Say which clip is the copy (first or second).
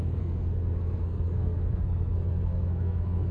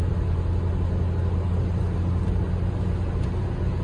first